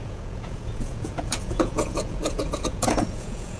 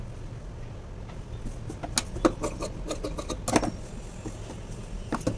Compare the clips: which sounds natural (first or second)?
second